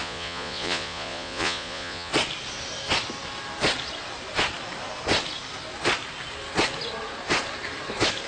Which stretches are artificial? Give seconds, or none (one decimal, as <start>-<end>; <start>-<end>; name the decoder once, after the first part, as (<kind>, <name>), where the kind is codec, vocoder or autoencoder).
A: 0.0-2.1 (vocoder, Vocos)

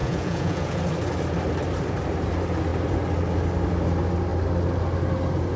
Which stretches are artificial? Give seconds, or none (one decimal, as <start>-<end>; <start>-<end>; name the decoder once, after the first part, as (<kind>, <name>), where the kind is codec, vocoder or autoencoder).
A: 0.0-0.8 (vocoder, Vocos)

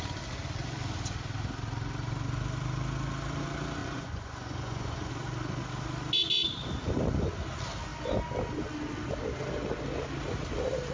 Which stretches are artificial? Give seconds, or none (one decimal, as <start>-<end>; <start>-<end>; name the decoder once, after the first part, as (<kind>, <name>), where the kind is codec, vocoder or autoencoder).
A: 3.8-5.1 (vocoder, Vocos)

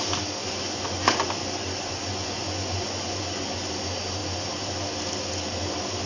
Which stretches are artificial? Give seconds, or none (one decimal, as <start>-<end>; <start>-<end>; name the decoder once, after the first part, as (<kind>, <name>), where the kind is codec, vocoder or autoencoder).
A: 0.4-3.7 (vocoder, Vocos)

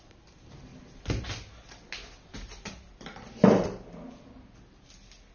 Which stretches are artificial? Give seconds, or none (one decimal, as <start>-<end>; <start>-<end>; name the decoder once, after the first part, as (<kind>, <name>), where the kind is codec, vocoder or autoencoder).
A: none

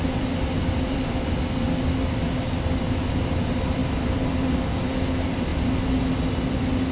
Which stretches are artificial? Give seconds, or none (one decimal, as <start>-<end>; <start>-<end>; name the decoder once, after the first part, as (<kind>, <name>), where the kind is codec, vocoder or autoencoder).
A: none